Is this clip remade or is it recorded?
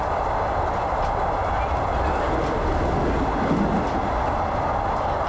recorded